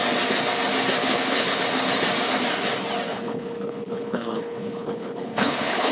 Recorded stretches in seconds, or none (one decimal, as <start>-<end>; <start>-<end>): 0.0-1.0; 1.6-3.1